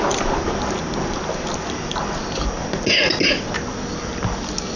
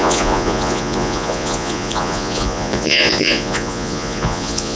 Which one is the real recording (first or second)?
first